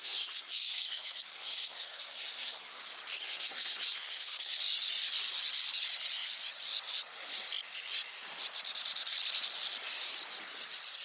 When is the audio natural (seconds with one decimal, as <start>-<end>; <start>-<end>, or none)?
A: 2.8-3.2; 4.6-11.0

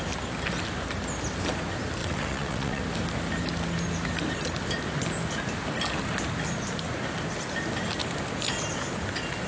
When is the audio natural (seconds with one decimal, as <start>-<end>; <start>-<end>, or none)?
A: 0.0-2.0; 2.8-9.5

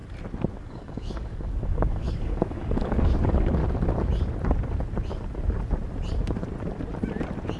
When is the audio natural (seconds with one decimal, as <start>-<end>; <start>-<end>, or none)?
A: 0.0-0.5; 3.6-7.6

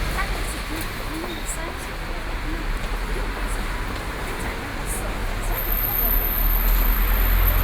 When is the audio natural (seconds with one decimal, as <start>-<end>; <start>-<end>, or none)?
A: 0.0-7.6